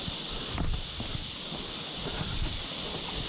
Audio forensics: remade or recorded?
recorded